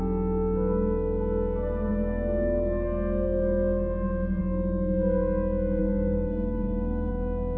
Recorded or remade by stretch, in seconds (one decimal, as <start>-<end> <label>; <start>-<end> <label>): 0.0-5.8 recorded; 5.8-7.1 remade; 7.1-7.6 recorded